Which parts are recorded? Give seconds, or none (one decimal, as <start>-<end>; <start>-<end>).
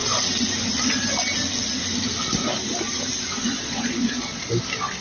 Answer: 0.0-3.4; 4.5-5.0